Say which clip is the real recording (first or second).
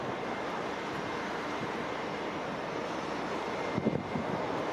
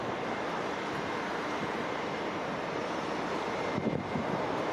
first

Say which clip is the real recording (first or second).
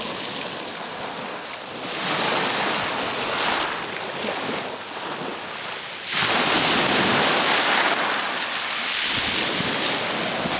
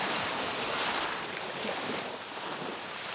first